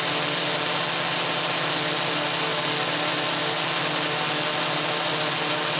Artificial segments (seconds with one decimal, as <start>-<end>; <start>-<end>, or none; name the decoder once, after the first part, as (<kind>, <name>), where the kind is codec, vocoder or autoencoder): none